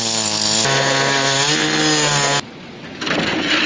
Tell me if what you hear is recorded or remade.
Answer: recorded